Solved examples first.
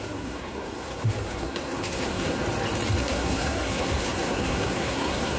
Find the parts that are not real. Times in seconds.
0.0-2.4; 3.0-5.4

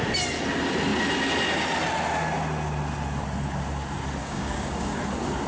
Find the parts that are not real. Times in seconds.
4.2-5.0